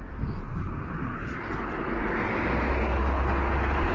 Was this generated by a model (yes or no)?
no